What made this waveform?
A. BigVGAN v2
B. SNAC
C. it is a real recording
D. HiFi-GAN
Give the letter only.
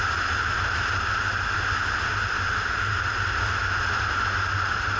C